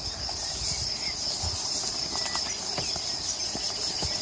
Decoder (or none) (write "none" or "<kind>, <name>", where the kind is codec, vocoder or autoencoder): none